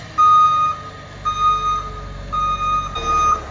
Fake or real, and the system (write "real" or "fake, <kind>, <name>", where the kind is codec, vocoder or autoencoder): real